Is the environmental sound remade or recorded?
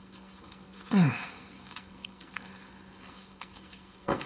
remade